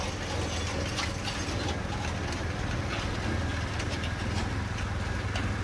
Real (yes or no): yes